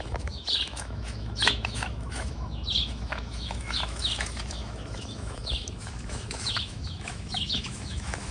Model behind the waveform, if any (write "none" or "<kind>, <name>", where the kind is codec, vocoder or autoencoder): autoencoder, DAC-VAE